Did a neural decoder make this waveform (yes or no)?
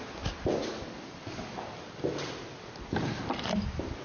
no